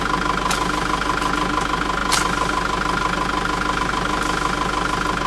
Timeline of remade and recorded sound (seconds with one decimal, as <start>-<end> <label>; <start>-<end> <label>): 0.0-5.3 recorded